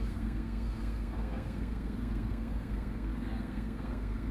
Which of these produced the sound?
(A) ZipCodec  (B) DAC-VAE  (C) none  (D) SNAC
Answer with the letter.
D